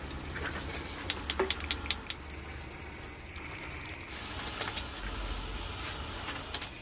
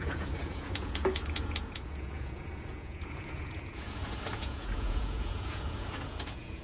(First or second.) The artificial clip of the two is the second